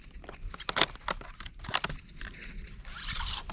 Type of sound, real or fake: real